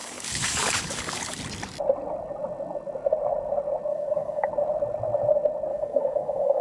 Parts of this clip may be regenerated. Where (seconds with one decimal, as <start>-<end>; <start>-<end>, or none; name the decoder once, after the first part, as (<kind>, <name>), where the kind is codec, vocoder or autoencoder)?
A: 0.0-1.4 (codec, DAC); 3.9-4.5; 5.7-6.6